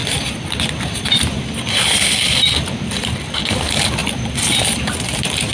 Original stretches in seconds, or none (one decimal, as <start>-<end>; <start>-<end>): 3.3-4.0; 4.9-5.5